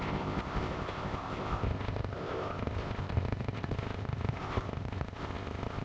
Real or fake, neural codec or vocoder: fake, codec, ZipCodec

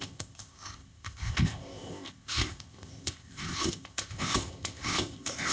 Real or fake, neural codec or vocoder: fake, codec, ZipCodec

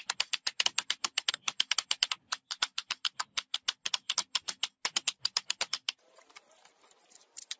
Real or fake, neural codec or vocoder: real